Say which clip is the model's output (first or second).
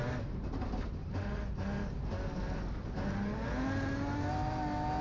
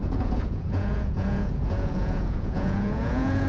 second